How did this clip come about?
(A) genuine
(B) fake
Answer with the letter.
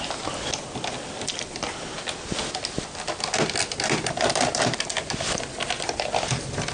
A